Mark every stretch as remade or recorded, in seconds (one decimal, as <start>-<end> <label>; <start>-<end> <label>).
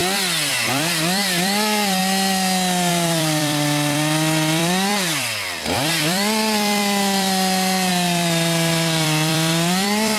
0.0-0.5 recorded; 0.5-2.0 remade; 2.0-2.9 recorded; 2.9-10.2 remade